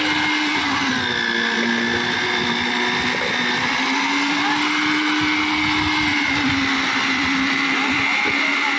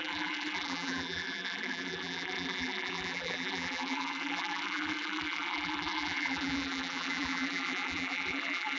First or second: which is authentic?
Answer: first